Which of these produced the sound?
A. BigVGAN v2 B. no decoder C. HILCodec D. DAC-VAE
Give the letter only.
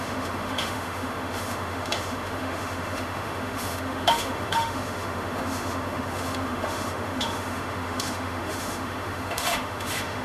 D